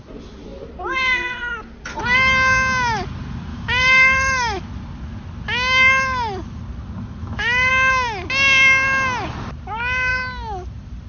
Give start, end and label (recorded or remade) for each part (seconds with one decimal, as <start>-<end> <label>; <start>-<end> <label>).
0.0-3.5 recorded; 3.5-4.6 remade; 4.6-7.2 recorded; 7.2-7.7 remade; 7.7-11.1 recorded